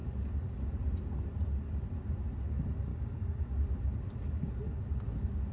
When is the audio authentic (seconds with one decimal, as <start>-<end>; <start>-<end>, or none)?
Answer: 0.0-2.9; 3.5-5.5